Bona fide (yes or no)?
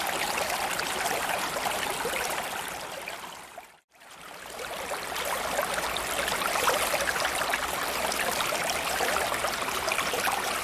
no